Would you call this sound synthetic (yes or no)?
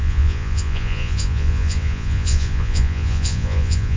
yes